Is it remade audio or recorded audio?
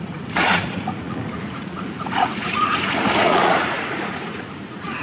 remade